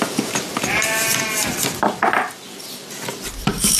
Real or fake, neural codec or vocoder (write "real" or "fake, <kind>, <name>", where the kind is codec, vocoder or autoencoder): real